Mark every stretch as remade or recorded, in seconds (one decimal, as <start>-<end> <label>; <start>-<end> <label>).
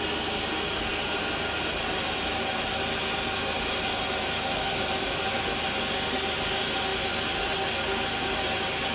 0.0-8.9 recorded